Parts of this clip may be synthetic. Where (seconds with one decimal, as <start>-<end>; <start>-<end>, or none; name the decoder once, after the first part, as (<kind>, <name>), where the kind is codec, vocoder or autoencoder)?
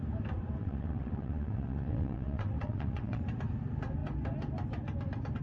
0.6-3.2 (vocoder, WaveNeXt)